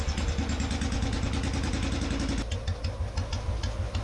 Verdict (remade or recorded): recorded